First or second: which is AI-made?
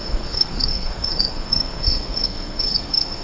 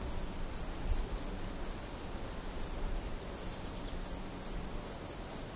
first